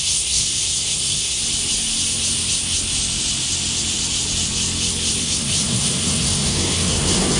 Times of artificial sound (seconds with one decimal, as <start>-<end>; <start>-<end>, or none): 0.0-1.4; 5.2-7.4